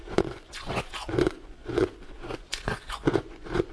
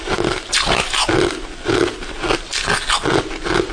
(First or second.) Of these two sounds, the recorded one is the second